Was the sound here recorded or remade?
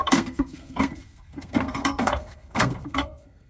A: remade